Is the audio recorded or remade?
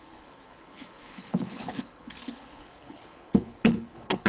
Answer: remade